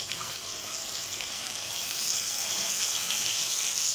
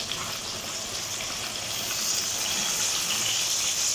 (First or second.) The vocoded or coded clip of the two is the first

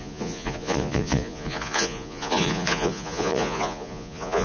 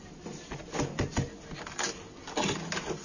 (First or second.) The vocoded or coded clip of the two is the first